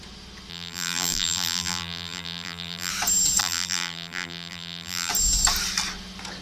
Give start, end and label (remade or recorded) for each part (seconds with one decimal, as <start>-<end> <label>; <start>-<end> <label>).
0.0-0.5 recorded; 0.5-2.9 remade; 2.9-3.4 recorded; 3.4-5.1 remade; 5.1-6.4 recorded